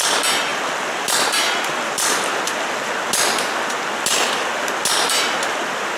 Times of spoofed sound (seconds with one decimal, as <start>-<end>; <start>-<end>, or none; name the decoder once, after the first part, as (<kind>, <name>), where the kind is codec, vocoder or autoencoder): 0.5-2.9 (vocoder, BigVGAN v2)